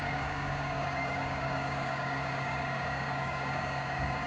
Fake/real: fake